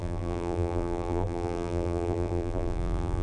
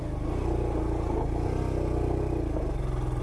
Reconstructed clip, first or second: first